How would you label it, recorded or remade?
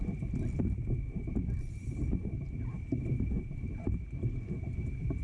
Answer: remade